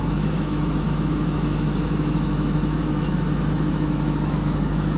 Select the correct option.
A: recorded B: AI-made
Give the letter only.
B